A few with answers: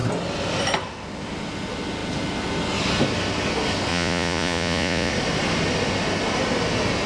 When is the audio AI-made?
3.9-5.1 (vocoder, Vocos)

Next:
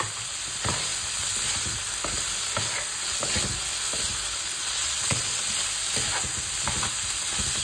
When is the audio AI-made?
4.6-5.4 (vocoder, Vocos)